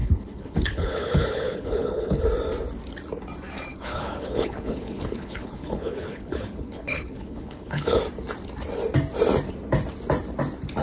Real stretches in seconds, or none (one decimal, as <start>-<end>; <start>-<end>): 2.2-3.7; 8.0-10.8